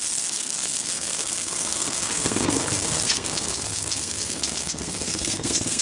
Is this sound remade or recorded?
remade